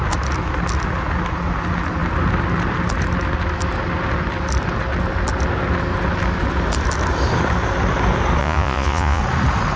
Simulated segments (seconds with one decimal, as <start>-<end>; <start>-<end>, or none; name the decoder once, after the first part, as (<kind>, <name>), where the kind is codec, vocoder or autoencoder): 8.4-9.2 (vocoder, Vocos)